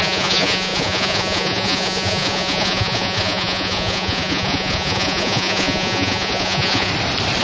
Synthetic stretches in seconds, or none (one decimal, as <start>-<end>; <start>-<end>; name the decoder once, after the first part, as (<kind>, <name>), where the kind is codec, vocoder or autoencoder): 0.0-6.9 (vocoder, Vocos)

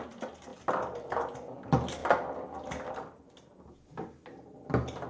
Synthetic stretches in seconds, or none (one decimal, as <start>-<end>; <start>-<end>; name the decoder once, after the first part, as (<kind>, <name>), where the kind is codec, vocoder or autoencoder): none

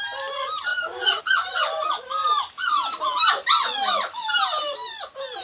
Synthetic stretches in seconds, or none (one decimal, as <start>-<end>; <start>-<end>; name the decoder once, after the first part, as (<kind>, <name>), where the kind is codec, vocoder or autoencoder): none

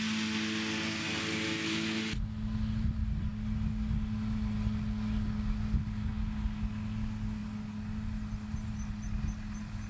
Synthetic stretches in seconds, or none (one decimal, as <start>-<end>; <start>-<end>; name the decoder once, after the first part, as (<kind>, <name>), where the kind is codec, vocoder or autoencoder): none

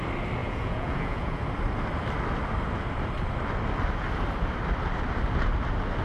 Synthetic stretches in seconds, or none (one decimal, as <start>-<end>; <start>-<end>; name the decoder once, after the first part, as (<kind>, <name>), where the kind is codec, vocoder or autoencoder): 0.4-1.4 (vocoder, Vocos)